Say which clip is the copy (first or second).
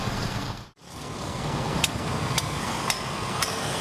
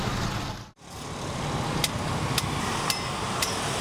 first